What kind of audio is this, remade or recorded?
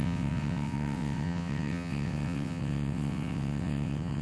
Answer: remade